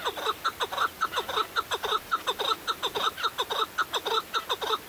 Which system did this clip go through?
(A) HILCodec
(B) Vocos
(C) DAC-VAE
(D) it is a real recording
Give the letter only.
D